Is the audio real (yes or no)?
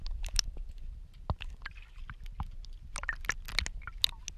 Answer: yes